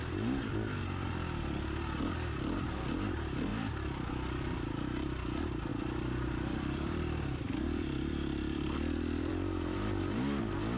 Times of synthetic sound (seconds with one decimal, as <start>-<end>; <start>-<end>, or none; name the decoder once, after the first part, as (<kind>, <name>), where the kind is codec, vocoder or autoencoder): 3.5-4.1 (vocoder, BigVGAN v2); 5.7-10.4